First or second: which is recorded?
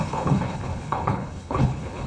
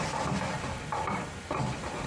second